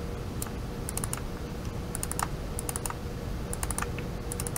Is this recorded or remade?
recorded